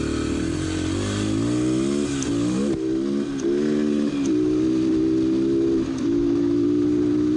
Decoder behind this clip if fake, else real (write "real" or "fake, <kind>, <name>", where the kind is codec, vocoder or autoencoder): real